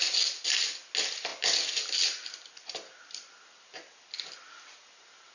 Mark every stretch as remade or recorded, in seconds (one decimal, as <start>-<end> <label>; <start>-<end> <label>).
0.0-5.3 recorded